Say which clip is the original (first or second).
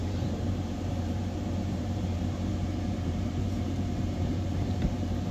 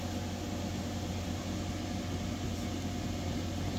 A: second